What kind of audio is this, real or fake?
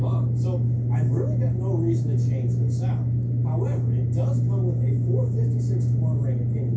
real